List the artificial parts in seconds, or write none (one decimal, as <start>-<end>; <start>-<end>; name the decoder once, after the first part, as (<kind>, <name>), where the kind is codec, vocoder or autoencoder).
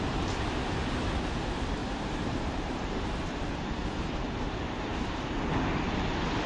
1.8-3.5 (vocoder, BigVGAN v2)